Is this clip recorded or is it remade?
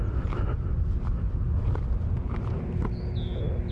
recorded